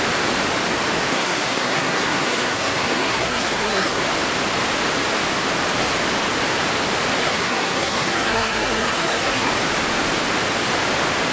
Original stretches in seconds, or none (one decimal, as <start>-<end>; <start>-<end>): 0.0-1.1; 4.0-7.2; 9.5-11.3